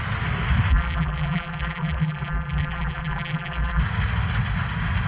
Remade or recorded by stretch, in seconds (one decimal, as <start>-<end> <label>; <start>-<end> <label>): 0.0-0.7 recorded; 0.7-3.8 remade; 3.8-5.1 recorded